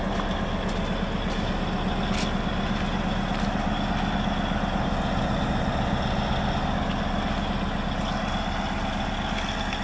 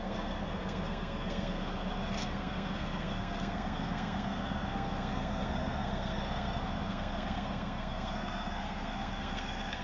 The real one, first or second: first